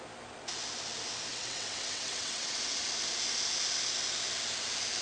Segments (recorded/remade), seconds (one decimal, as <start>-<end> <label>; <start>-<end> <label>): 0.0-1.3 recorded; 1.3-2.6 remade; 2.6-5.0 recorded